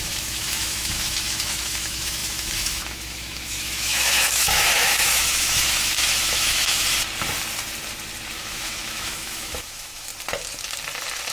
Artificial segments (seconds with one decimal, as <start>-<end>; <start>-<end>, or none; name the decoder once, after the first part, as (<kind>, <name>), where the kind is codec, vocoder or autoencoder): 0.0-6.8 (autoencoder, DAC-VAE); 8.4-10.1